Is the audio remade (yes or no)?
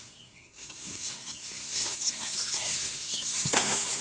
yes